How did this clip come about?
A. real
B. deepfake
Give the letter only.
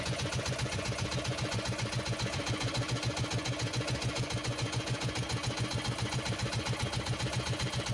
B